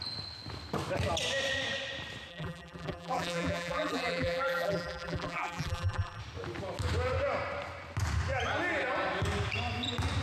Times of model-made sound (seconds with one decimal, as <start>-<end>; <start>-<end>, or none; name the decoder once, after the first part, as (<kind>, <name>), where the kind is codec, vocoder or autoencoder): 2.3-6.2 (vocoder, BigVGAN v2)